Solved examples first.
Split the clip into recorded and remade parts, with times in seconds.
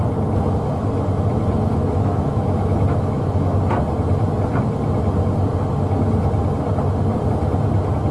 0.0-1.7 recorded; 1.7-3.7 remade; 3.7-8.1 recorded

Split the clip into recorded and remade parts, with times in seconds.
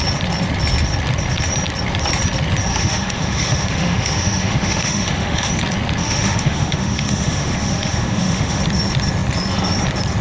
0.0-2.7 recorded; 2.7-5.5 remade; 5.5-6.0 recorded; 6.0-8.6 remade; 8.6-10.2 recorded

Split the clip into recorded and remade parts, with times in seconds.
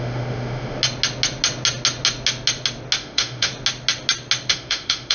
0.0-0.8 remade; 0.8-3.0 recorded; 3.0-3.5 remade; 3.5-4.5 recorded; 4.5-5.1 remade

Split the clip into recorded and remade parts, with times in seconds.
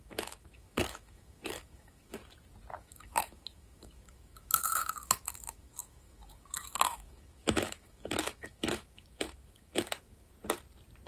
0.0-2.2 remade; 2.2-2.8 recorded; 2.8-10.3 remade; 10.3-11.1 recorded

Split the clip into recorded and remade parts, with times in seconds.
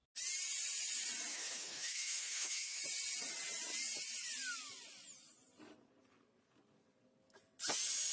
0.0-1.3 recorded; 1.3-2.8 remade; 2.8-8.1 recorded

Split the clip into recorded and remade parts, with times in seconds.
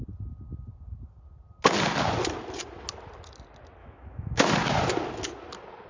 0.0-3.8 recorded; 3.8-4.5 remade; 4.5-5.9 recorded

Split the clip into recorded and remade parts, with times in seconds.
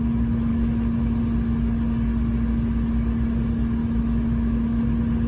0.0-0.5 recorded; 0.5-1.2 remade; 1.2-3.8 recorded; 3.8-4.8 remade; 4.8-5.3 recorded